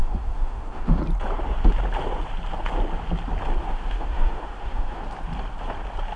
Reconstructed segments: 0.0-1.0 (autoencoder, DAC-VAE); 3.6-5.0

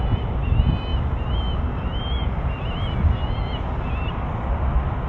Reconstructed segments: none

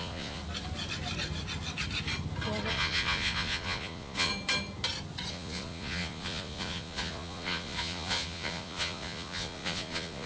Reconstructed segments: 0.0-0.4 (vocoder, Vocos); 2.7-4.3; 5.3-10.3